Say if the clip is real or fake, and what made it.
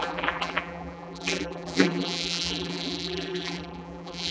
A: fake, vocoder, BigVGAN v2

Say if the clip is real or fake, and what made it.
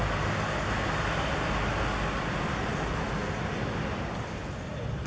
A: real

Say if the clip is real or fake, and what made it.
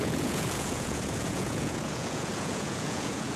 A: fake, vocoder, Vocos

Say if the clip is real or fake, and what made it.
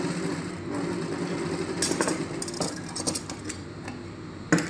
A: real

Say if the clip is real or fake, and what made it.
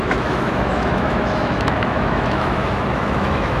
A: fake, autoencoder, DAC-VAE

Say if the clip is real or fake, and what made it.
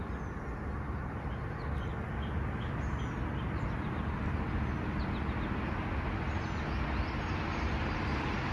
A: real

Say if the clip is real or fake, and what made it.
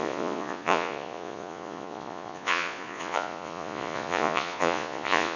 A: fake, vocoder, Vocos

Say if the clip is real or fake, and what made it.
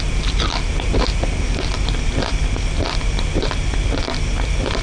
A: real